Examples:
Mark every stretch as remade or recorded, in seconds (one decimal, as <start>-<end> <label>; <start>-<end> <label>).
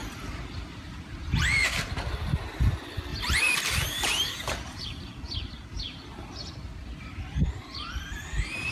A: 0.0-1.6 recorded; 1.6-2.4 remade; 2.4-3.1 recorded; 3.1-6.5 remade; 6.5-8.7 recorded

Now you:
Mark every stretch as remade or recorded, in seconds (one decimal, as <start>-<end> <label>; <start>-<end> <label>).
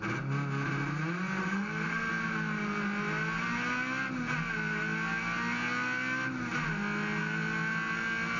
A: 0.0-1.4 recorded; 1.4-2.1 remade; 2.1-8.4 recorded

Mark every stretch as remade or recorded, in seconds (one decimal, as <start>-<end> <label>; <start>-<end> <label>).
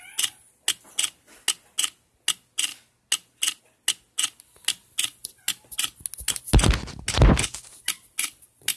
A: 0.0-8.8 recorded